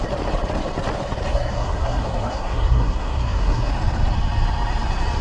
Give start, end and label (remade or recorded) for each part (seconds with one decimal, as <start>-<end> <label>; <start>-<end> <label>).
0.0-1.3 recorded; 1.3-3.7 remade; 3.7-5.2 recorded